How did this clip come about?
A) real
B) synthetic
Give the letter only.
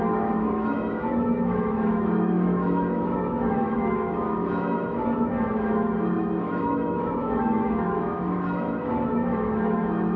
B